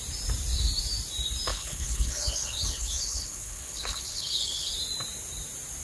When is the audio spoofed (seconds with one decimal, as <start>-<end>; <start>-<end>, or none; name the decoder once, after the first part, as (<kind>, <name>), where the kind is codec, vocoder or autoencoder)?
1.5-4.7 (codec, HILCodec)